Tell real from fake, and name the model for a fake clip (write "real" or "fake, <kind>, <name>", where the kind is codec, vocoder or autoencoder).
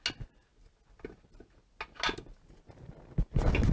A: real